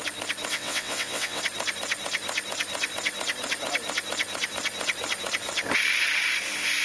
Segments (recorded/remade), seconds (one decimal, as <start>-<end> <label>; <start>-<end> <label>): 0.0-0.5 recorded; 0.5-1.4 remade; 1.4-6.8 recorded